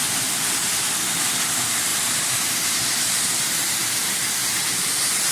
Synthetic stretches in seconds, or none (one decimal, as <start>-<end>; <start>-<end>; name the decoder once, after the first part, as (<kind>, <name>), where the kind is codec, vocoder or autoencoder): 1.9-3.3 (vocoder, BigVGAN v2); 3.8-5.3